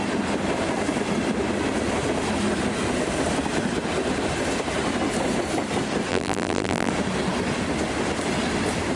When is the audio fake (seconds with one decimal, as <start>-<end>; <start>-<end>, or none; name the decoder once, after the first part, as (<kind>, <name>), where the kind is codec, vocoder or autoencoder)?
6.1-6.9 (vocoder, BigVGAN v2)